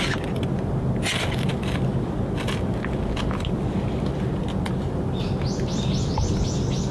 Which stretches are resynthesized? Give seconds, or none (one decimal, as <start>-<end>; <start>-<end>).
none